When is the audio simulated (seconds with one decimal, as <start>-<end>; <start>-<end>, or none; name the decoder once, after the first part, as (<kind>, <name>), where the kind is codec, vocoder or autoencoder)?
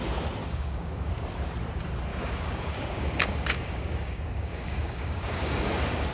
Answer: 0.4-1.1 (codec, DAC); 2.1-6.1